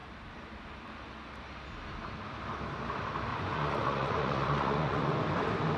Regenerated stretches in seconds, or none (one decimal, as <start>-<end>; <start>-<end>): 3.3-5.2